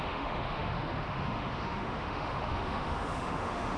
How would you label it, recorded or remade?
remade